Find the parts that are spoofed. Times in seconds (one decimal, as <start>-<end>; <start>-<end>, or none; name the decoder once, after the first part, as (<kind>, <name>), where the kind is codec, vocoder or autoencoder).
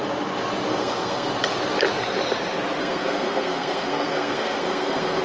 0.7-1.3 (codec, SNAC); 2.8-5.2